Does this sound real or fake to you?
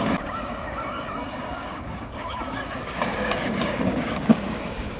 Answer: fake